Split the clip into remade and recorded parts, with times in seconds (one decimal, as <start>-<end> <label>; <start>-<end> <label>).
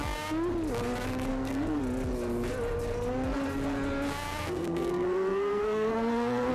0.0-1.3 recorded; 1.3-1.8 remade; 1.8-4.4 recorded; 4.4-6.5 remade